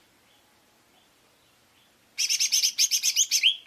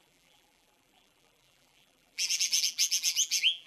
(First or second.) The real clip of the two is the first